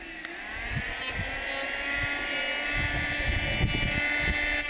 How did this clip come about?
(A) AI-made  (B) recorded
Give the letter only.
B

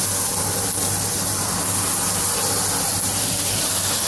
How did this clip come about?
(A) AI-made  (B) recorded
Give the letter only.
B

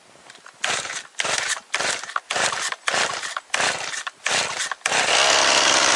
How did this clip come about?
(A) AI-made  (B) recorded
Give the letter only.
B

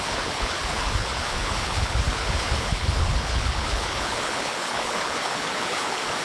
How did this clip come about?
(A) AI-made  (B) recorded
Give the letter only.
A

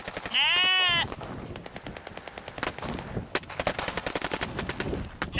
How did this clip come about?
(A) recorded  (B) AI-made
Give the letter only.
A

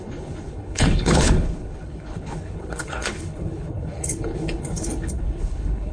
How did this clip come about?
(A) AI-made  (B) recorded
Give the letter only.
A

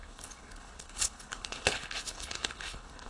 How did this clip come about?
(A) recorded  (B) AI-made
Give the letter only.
B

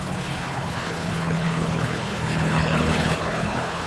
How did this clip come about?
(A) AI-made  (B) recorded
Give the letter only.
A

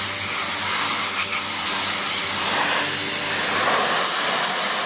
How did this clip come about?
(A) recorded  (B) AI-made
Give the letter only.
A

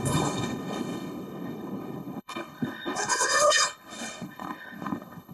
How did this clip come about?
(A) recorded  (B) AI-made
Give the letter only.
B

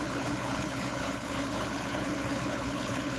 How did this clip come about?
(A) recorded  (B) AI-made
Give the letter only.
B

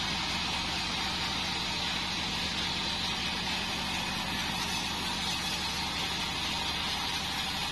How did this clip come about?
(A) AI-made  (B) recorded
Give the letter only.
B